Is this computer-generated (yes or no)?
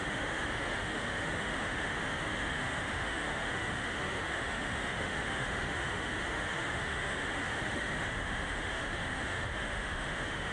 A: yes